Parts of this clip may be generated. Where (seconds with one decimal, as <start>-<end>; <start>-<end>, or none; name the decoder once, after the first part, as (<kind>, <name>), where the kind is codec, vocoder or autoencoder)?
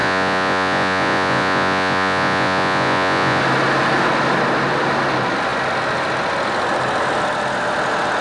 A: 0.0-3.4 (vocoder, Vocos)